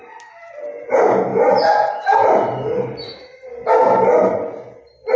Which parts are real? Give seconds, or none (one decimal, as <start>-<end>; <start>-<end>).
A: 0.0-5.2